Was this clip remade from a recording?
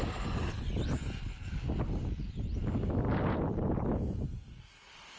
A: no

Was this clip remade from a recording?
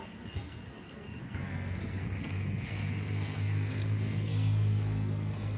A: yes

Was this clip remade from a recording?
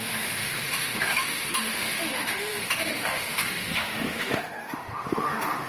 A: yes